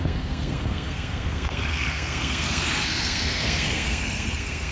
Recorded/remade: remade